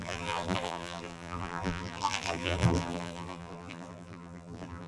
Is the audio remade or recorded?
remade